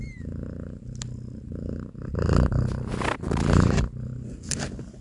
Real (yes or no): yes